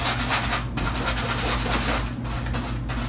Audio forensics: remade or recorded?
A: recorded